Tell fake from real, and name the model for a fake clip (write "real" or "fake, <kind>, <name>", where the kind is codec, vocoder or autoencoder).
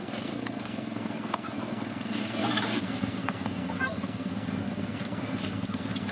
fake, codec, SNAC